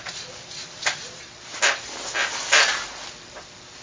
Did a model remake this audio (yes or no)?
no